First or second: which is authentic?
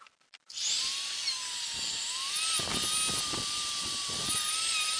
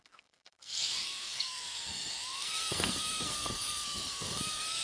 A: first